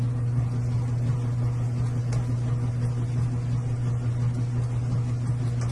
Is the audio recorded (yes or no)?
yes